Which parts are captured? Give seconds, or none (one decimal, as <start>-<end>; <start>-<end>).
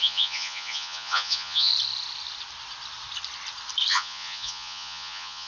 1.7-3.9